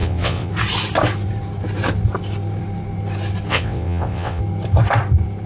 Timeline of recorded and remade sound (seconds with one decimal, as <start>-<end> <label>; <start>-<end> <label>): 0.0-0.5 remade; 0.5-3.5 recorded; 3.5-4.4 remade; 4.4-5.5 recorded